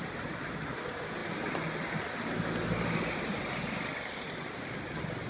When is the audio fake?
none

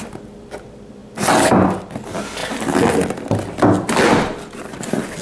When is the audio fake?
none

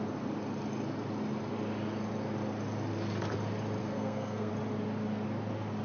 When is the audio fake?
3.8-4.5 (codec, SNAC)

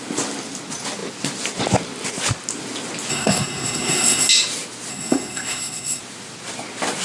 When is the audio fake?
3.1-4.3 (codec, SNAC); 4.9-6.0

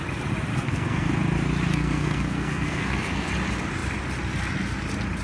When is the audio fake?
0.5-1.1 (codec, SNAC); 1.7-3.3

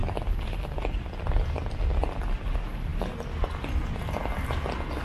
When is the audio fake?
none

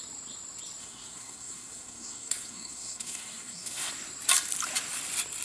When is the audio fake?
0.8-3.9 (codec, SNAC)